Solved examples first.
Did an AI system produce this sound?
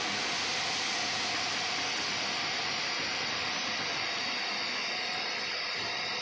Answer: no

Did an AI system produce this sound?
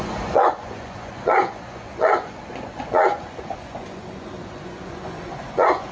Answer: yes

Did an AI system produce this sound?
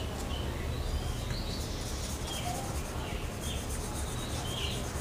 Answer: no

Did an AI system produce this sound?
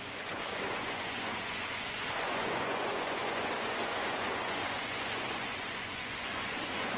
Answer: yes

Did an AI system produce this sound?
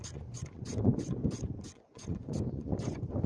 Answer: yes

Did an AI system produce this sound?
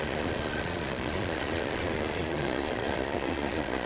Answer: yes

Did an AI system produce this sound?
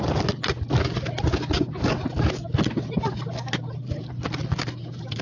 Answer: no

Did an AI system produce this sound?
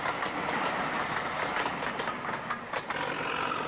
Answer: no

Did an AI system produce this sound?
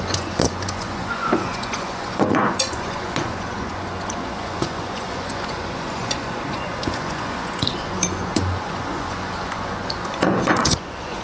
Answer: yes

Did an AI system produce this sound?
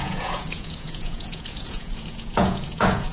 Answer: yes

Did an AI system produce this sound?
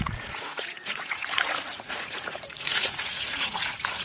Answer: yes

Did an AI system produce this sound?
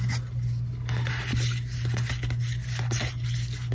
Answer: no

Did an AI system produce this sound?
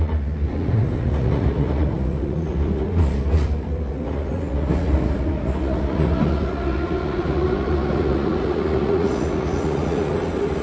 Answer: yes